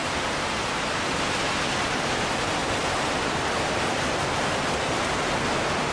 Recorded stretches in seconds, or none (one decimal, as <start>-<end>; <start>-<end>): 0.0-5.9